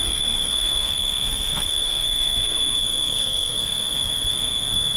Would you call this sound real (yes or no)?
no